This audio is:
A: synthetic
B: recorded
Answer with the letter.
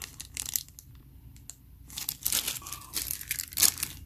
B